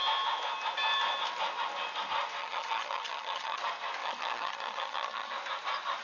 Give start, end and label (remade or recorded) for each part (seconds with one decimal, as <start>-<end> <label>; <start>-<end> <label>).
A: 0.0-2.4 recorded; 2.4-3.6 remade; 3.6-4.0 recorded; 4.0-5.3 remade; 5.3-6.0 recorded